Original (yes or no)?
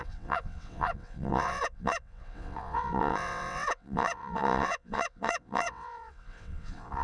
no